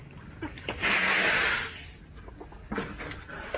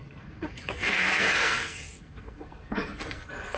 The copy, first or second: second